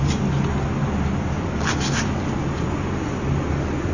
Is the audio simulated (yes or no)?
no